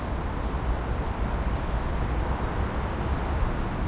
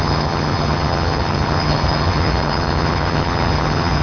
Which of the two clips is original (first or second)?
first